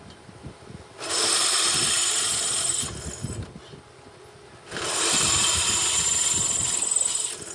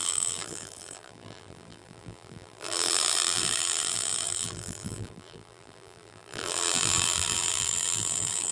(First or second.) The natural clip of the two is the first